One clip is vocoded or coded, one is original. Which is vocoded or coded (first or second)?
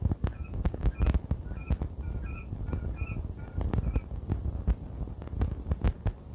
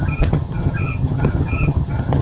second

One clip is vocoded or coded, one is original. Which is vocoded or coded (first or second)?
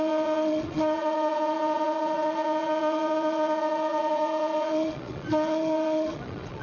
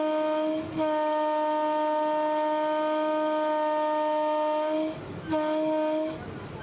first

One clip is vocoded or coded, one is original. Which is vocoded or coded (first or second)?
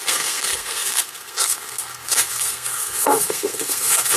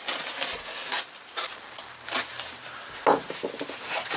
first